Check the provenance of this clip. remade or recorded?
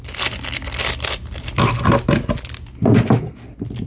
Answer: recorded